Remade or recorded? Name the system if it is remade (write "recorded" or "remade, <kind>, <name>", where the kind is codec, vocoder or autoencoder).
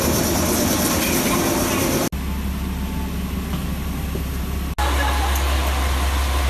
recorded